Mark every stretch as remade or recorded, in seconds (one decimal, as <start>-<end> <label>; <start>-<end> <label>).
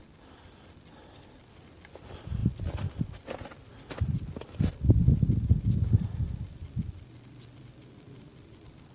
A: 0.0-8.9 recorded